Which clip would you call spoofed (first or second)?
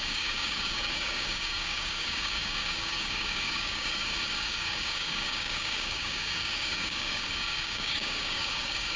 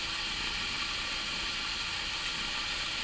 first